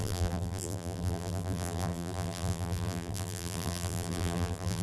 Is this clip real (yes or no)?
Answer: no